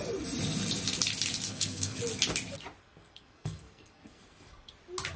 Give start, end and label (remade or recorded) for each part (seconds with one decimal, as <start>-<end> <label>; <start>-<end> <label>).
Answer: 0.0-1.5 recorded; 1.5-2.0 remade; 2.0-2.8 recorded; 2.8-4.7 remade; 4.7-5.2 recorded